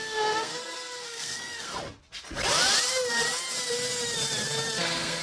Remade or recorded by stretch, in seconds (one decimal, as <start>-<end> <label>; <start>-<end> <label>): 0.0-1.7 remade; 1.7-4.8 recorded; 4.8-5.2 remade